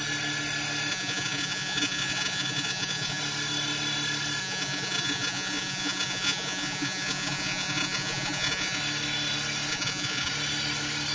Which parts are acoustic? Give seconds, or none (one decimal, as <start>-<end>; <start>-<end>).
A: 0.0-0.9; 3.2-4.4; 8.8-9.7; 10.3-11.1